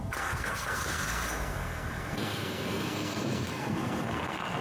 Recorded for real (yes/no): no